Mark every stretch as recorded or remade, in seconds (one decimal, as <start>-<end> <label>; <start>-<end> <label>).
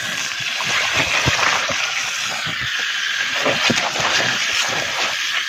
0.0-3.7 recorded; 3.7-5.5 remade